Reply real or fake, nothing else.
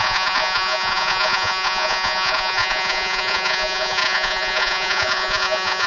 fake